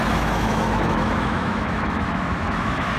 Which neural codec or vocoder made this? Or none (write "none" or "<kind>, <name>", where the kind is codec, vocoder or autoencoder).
autoencoder, DAC-VAE